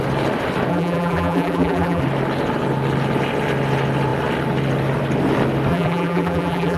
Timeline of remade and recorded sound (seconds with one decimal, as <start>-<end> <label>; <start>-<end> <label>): 0.0-0.7 recorded; 0.7-2.0 remade; 2.0-5.7 recorded; 5.7-6.8 remade